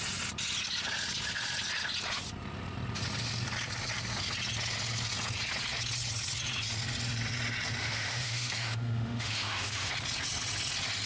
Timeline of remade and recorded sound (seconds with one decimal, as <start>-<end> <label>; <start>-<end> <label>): 0.0-7.8 recorded; 7.8-9.9 remade; 9.9-11.1 recorded